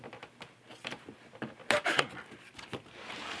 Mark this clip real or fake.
real